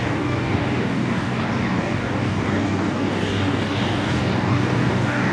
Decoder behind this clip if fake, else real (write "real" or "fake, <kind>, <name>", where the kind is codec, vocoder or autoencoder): fake, codec, DAC